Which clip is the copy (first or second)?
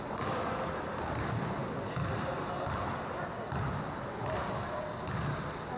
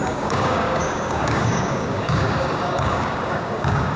second